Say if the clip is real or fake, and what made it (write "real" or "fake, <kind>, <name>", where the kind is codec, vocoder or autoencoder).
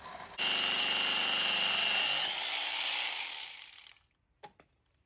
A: fake, vocoder, BigVGAN v2